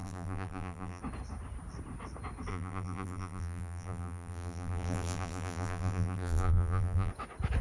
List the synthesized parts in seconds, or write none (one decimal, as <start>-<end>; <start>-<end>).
0.0-1.0; 2.5-7.1